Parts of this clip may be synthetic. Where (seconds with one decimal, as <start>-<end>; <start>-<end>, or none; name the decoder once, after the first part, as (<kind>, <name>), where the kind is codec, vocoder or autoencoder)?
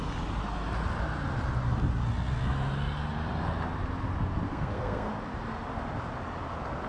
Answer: 4.5-5.1 (codec, SNAC)